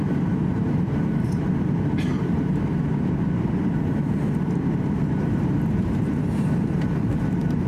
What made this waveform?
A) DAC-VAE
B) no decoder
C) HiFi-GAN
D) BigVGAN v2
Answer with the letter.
D